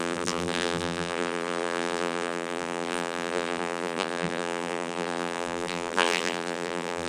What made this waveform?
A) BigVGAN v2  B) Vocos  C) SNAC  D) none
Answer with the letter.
A